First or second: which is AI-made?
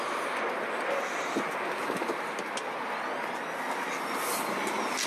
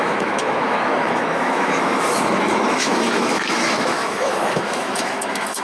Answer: second